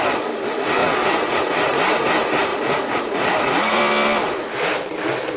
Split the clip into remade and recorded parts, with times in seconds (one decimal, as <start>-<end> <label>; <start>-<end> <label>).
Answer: 0.0-0.8 recorded; 0.8-1.4 remade; 1.4-2.5 recorded; 2.5-3.8 remade; 3.8-5.4 recorded